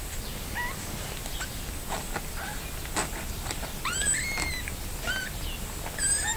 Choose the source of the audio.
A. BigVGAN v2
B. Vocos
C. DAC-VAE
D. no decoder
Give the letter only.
D